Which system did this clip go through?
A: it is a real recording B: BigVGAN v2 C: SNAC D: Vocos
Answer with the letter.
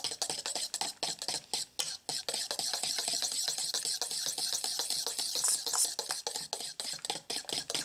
A